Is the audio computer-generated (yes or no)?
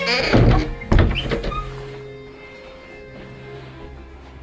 no